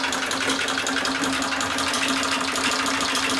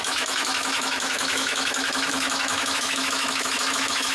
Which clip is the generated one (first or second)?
second